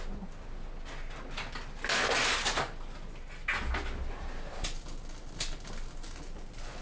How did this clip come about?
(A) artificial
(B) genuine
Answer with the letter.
B